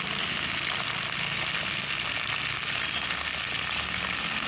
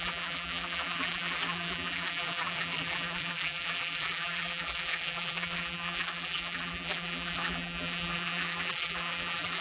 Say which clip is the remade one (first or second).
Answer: second